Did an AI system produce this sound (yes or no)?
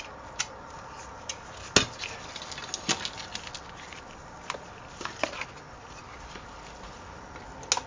no